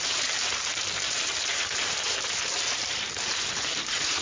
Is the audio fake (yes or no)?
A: yes